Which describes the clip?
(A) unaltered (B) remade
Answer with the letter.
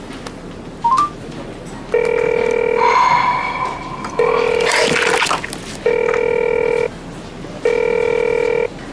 A